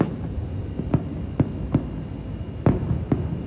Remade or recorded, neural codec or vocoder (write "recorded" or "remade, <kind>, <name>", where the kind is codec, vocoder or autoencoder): recorded